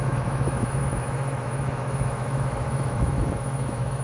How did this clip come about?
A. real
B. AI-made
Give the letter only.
B